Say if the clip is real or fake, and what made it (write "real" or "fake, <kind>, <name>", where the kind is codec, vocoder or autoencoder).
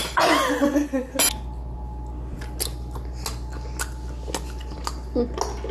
real